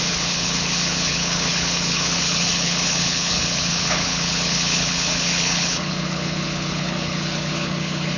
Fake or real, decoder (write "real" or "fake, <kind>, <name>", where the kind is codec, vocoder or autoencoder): fake, codec, HILCodec